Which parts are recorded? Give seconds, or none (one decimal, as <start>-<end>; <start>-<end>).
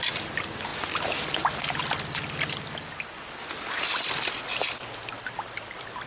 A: 0.0-6.1